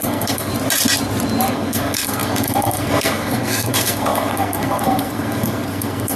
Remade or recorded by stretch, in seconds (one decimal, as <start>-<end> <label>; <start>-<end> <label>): 0.0-0.5 remade; 0.5-1.5 recorded; 1.5-6.2 remade